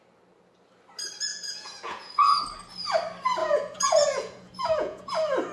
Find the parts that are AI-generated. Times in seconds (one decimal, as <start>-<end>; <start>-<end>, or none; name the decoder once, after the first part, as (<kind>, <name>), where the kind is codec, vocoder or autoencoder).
1.3-2.4 (vocoder, Vocos); 3.4-5.1